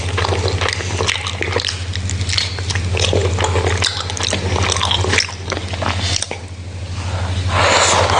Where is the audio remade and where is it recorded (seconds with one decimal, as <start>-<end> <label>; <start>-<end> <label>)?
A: 0.0-8.2 recorded